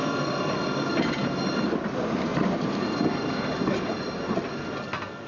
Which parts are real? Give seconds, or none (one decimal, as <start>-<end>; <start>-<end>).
0.0-2.3; 3.0-5.3